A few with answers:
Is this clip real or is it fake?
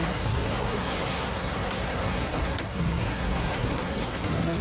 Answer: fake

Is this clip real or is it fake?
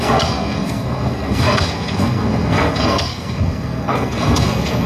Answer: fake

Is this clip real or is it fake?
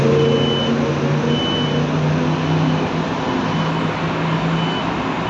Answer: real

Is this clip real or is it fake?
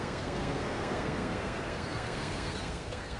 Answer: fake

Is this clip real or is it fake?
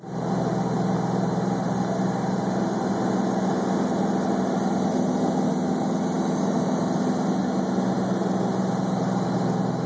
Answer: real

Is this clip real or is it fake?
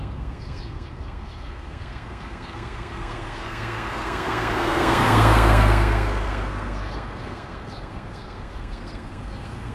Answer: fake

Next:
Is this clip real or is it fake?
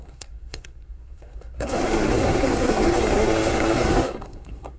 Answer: fake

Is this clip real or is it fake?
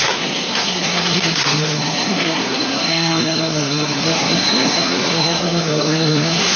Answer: fake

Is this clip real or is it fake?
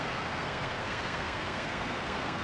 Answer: fake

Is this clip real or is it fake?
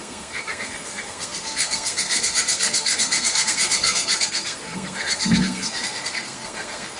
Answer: fake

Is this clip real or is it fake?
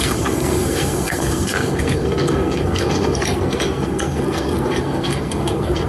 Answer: fake